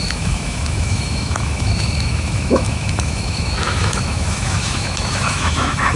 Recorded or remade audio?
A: remade